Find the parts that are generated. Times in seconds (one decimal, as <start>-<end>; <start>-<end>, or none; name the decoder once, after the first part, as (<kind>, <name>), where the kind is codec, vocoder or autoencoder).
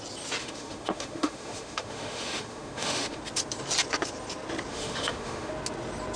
0.4-3.2 (autoencoder, DAC-VAE); 4.7-5.5